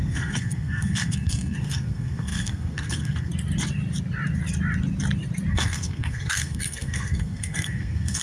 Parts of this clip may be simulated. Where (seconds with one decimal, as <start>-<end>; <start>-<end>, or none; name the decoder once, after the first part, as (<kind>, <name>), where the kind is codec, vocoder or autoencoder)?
0.0-3.3 (codec, SNAC); 5.5-8.2